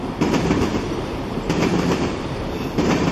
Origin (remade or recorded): remade